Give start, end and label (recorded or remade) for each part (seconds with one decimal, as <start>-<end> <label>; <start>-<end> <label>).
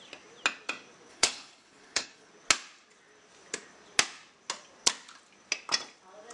0.0-1.1 recorded; 1.1-2.3 remade; 2.3-6.3 recorded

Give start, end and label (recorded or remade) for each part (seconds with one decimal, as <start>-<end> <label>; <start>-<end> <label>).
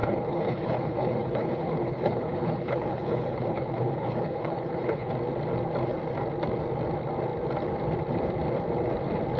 0.0-5.1 remade; 5.1-9.4 recorded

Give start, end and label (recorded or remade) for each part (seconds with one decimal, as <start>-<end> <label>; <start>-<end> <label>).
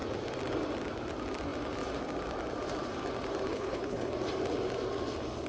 0.0-3.5 recorded; 3.5-4.1 remade; 4.1-5.5 recorded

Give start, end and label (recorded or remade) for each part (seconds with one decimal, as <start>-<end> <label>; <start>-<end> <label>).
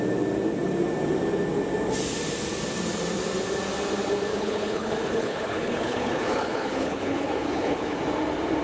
0.0-4.3 recorded; 4.3-8.0 remade; 8.0-8.6 recorded